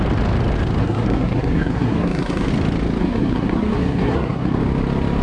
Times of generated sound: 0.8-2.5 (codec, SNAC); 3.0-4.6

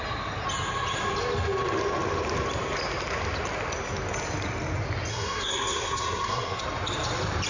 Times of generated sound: 5.1-6.6 (codec, SNAC)

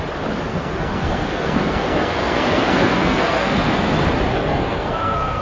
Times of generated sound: 0.5-3.7 (codec, SNAC); 4.3-5.4